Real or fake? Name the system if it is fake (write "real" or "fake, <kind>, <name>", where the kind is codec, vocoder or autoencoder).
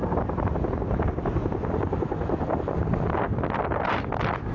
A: real